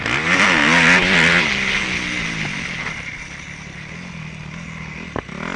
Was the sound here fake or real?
real